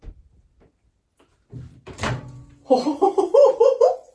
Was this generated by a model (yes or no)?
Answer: no